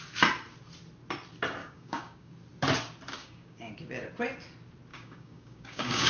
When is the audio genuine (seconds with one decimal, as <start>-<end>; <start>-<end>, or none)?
0.0-1.6; 2.3-3.2; 3.7-4.9